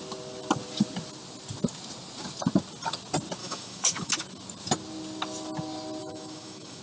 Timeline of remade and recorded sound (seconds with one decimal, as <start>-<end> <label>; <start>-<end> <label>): 0.0-3.4 recorded; 3.4-4.1 remade; 4.1-6.0 recorded; 6.0-6.8 remade